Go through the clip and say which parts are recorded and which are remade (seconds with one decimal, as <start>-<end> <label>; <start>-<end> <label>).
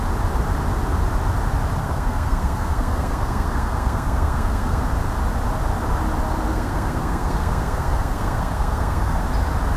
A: 0.0-1.8 recorded; 1.8-4.8 remade; 4.8-6.5 recorded; 6.5-9.2 remade; 9.2-9.8 recorded